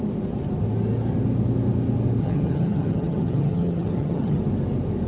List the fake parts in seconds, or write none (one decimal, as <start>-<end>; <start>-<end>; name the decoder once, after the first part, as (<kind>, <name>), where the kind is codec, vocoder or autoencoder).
2.2-4.4 (vocoder, HiFi-GAN)